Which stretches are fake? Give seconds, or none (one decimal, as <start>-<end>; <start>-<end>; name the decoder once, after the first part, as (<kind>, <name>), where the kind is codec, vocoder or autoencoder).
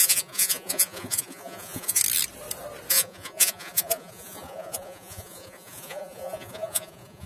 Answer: 0.0-2.0 (vocoder, Vocos); 2.9-7.3